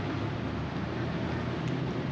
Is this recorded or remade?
recorded